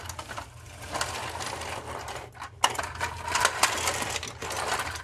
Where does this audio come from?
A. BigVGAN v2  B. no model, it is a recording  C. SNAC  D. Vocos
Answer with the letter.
B